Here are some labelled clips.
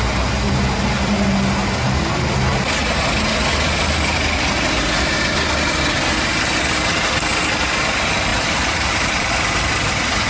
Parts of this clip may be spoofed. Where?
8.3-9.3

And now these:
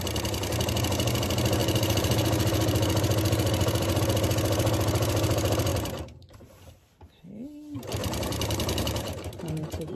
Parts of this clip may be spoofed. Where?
1.6-4.0; 5.7-6.8; 8.0-9.9